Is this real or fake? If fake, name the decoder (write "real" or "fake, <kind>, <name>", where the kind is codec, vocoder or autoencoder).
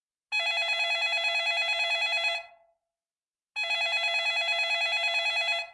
real